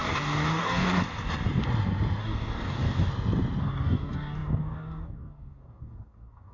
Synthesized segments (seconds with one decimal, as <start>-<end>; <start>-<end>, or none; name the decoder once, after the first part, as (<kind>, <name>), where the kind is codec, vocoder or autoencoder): 0.0-1.0 (codec, DAC); 2.2-3.1; 3.6-6.5